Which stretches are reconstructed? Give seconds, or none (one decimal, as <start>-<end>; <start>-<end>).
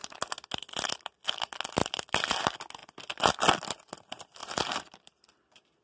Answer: 1.8-2.4; 4.4-5.8